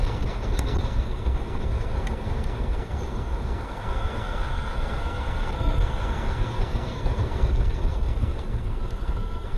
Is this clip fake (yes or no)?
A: yes